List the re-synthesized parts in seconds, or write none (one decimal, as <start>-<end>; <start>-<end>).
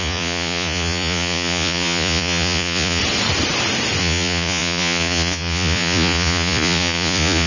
0.0-3.0; 4.0-7.5